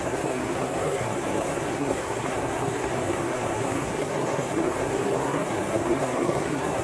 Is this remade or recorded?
remade